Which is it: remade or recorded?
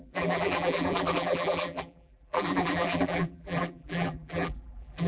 remade